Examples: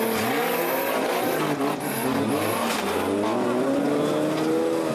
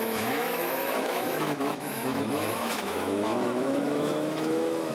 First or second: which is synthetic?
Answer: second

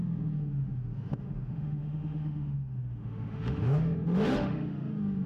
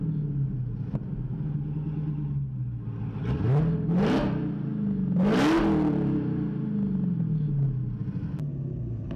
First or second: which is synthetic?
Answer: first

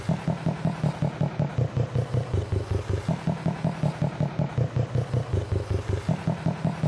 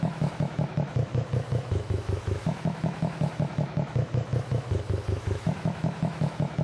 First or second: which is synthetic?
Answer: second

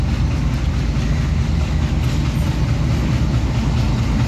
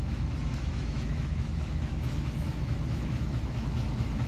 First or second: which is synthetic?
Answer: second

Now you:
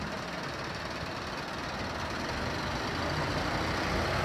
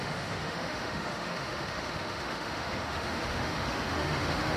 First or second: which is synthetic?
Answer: second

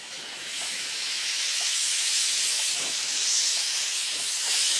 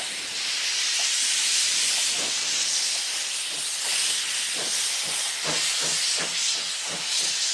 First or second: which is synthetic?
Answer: first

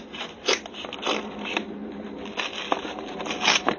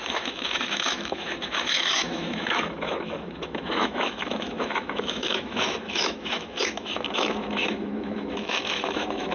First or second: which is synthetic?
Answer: second